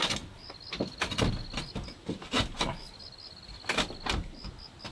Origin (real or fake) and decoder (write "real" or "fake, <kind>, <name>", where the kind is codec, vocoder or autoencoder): real